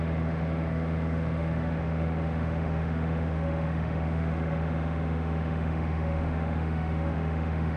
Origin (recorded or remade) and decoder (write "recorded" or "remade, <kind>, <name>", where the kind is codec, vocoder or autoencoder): remade, autoencoder, DAC-VAE